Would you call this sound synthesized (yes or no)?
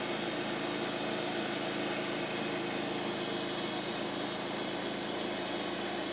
no